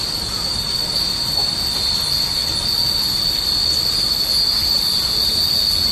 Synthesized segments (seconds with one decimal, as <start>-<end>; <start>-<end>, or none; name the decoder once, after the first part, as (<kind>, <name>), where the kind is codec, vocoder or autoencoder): none